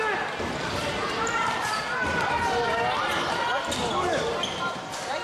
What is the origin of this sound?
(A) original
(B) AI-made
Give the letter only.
B